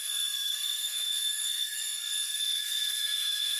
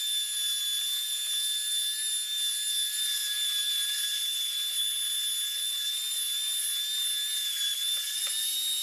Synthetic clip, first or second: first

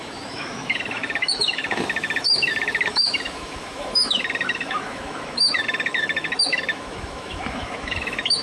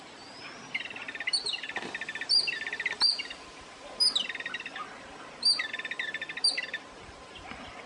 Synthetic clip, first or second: first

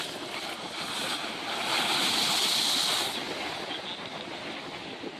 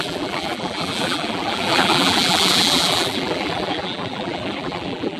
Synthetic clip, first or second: second